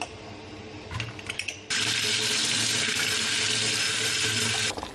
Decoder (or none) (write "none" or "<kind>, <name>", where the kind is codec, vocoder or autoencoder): none